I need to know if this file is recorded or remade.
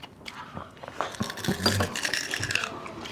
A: recorded